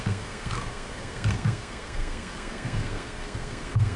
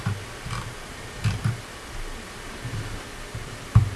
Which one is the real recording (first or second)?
second